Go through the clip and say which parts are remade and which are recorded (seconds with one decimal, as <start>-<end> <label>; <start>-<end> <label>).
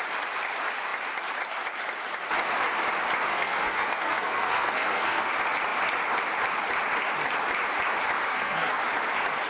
0.0-3.3 recorded; 3.3-5.3 remade; 5.3-8.3 recorded; 8.3-8.8 remade; 8.8-9.5 recorded